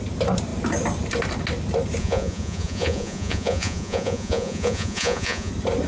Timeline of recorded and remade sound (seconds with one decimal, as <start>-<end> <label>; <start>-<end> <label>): 0.0-2.0 recorded; 2.0-5.5 remade; 5.5-5.9 recorded